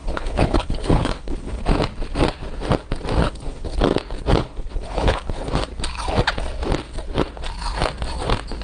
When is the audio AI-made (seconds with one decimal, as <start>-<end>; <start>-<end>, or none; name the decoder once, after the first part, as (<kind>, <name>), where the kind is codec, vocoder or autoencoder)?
0.0-1.6 (codec, HILCodec); 3.2-3.8; 4.3-5.5